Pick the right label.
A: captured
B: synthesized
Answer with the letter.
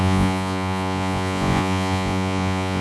B